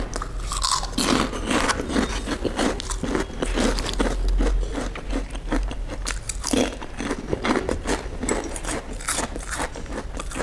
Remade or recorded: recorded